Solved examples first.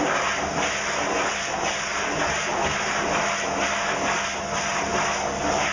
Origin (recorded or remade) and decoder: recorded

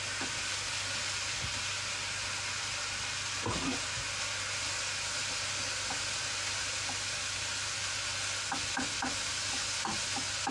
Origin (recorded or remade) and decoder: recorded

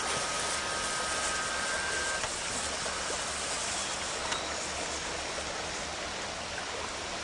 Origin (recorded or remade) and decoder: recorded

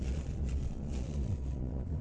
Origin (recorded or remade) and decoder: remade, vocoder, Vocos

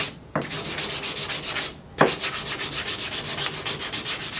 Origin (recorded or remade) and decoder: recorded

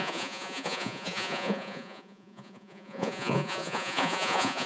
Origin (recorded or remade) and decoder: remade, vocoder, Vocos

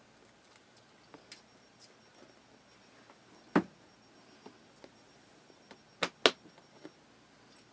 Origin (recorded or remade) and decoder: recorded